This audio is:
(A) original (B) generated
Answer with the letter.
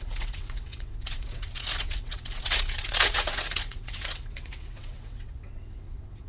B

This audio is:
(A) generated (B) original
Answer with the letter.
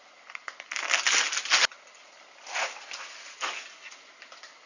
B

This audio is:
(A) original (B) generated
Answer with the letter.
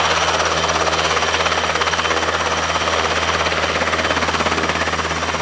A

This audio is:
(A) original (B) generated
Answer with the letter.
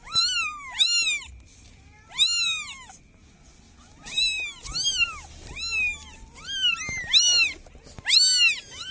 A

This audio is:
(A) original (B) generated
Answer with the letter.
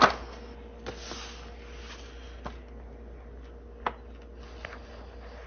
A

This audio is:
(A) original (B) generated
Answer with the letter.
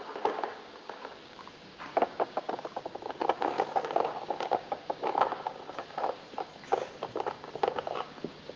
B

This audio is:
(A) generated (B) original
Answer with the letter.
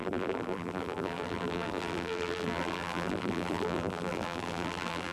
A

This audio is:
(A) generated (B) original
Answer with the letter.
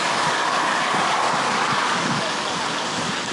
A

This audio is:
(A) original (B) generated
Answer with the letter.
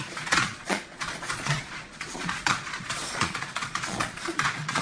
B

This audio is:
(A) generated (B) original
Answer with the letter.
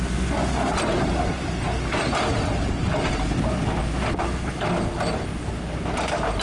B